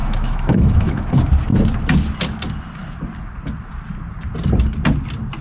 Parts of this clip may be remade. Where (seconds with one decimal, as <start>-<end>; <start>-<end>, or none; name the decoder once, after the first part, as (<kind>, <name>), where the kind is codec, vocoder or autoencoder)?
0.0-1.1 (autoencoder, DAC-VAE)